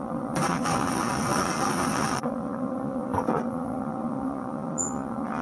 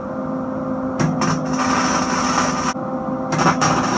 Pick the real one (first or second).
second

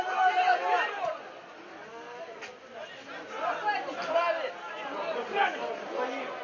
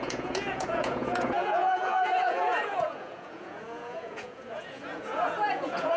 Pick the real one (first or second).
first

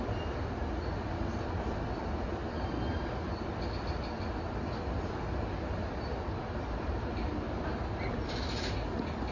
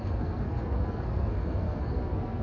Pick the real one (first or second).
first